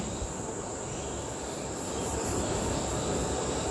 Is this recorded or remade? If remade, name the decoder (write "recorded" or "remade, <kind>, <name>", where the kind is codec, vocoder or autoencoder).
recorded